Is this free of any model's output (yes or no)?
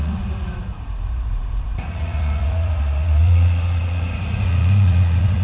no